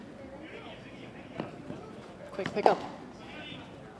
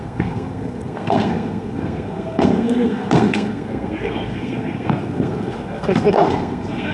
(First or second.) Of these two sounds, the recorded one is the first